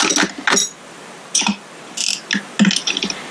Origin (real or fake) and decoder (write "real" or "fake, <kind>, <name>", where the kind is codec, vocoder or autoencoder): real